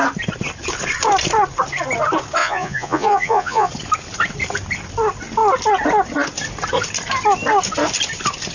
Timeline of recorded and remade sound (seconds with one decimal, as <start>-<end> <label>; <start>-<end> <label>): 0.0-2.4 recorded; 2.4-3.7 remade; 3.7-8.5 recorded